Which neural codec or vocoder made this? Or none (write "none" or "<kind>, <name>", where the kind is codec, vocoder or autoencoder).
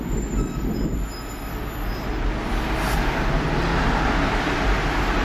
none